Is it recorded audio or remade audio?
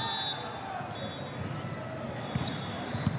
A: recorded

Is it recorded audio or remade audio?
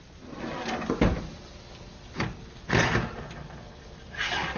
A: recorded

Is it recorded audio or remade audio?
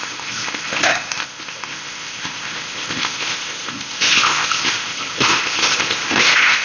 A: remade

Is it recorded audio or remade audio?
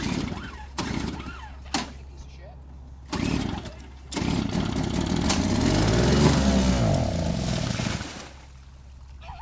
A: recorded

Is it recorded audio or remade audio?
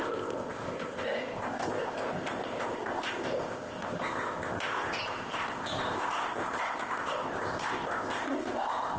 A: remade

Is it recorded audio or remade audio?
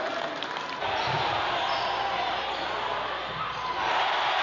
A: recorded